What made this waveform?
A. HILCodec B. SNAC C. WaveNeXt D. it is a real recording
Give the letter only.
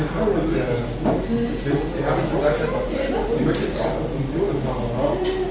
D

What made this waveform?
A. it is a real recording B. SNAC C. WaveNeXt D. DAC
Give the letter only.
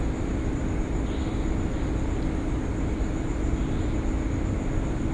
A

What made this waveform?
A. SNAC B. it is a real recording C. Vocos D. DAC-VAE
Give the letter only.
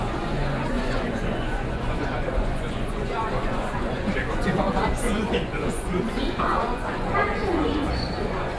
C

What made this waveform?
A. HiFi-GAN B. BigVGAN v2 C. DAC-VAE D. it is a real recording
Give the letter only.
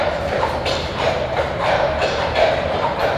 B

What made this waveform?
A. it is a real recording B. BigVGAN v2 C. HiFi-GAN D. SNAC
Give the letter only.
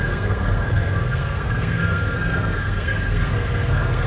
D